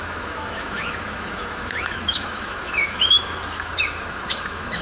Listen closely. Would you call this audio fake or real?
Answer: fake